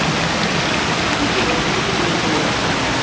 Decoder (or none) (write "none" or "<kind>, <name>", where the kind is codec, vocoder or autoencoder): none